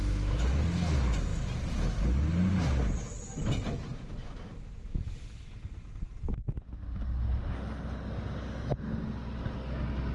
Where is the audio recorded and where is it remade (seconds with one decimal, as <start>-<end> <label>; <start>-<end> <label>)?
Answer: 0.0-10.1 recorded